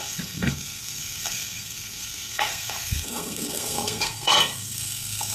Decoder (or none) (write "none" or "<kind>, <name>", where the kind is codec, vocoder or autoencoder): codec, SNAC